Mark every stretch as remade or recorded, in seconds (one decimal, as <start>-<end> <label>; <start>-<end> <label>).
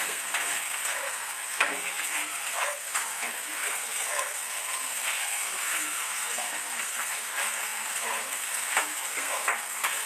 0.0-10.1 remade